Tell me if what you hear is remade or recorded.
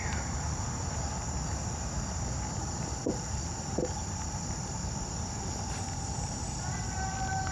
recorded